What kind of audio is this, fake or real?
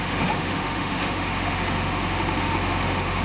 fake